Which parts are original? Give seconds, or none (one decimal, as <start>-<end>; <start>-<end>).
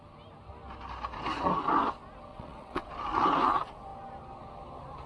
0.0-2.3; 2.9-5.1